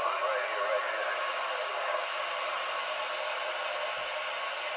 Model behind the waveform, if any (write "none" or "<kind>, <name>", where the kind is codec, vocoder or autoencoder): none